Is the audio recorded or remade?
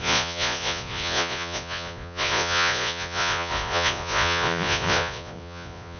remade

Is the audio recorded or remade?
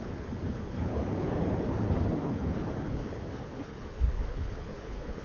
remade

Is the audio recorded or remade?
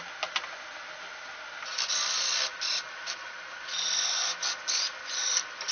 recorded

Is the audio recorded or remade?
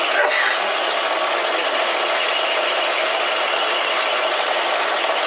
recorded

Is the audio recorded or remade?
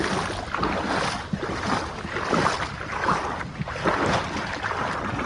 recorded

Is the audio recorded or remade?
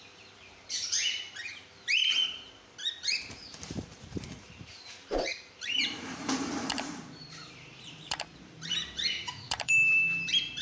remade